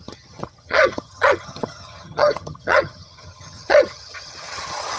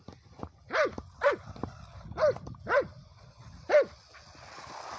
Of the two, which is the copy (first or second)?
first